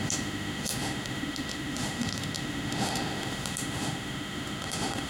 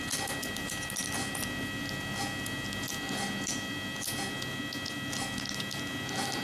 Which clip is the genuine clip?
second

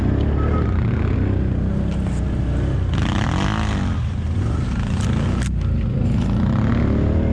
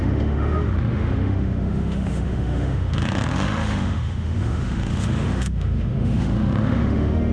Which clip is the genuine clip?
first